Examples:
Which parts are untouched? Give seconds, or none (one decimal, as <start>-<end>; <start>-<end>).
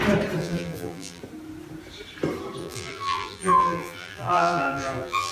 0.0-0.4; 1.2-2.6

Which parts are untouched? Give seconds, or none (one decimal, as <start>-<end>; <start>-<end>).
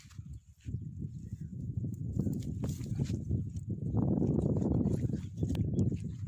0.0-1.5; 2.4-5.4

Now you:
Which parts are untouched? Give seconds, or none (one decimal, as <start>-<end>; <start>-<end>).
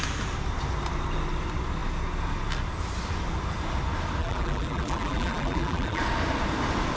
0.0-4.2; 6.0-7.0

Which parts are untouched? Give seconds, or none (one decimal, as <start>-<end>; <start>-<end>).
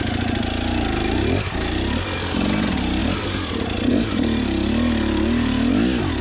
0.0-6.2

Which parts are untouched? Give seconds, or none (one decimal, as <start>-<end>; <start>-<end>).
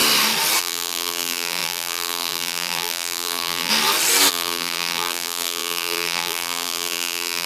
0.0-0.6; 3.7-4.3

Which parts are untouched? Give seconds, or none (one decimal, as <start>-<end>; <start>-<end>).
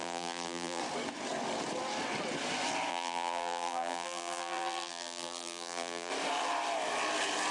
0.8-2.9; 6.1-7.5